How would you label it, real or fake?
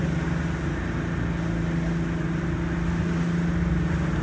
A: real